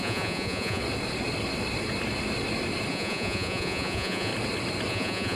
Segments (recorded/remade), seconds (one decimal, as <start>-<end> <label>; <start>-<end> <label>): 0.0-0.8 remade; 0.8-2.9 recorded; 2.9-4.3 remade; 4.3-4.9 recorded; 4.9-5.4 remade